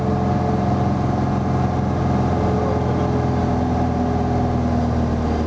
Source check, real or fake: real